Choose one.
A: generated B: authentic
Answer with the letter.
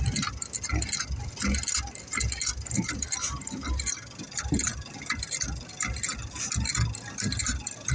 B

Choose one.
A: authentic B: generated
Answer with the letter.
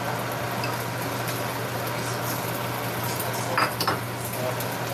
A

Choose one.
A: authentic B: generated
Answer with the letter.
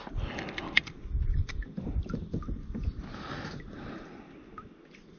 A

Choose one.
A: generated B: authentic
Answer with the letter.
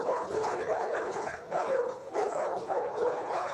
A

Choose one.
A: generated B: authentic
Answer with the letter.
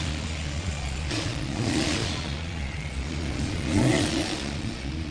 A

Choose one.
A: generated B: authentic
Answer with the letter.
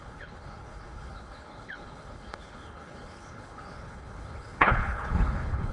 A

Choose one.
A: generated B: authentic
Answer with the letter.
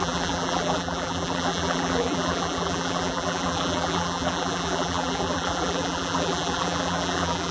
A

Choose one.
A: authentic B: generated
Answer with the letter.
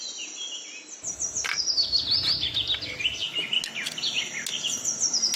A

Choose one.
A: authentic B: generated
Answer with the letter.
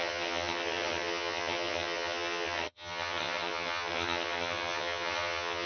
B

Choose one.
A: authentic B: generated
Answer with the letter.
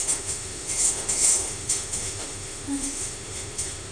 B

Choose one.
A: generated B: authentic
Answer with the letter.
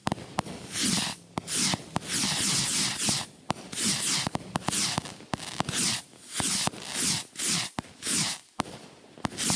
B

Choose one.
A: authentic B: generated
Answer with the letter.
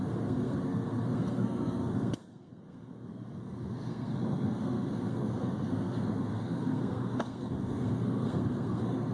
B